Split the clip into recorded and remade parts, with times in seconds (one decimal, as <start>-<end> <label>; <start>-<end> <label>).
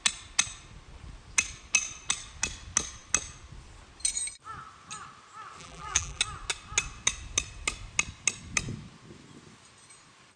0.0-5.6 recorded; 5.6-6.2 remade; 6.2-10.4 recorded